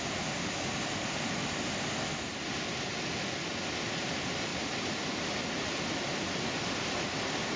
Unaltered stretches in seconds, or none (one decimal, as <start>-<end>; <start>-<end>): 0.0-4.5; 5.2-7.6